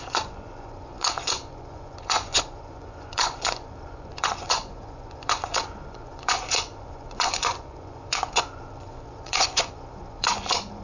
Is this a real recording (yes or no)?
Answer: no